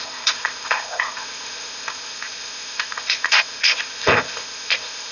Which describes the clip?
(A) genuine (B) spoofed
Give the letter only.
B